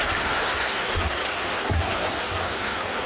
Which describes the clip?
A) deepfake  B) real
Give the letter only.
A